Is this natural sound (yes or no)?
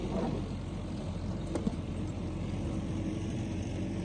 no